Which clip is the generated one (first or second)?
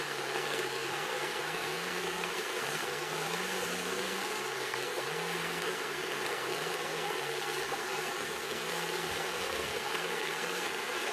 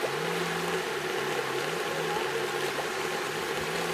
first